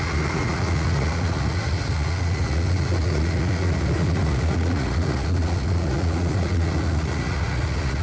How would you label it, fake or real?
fake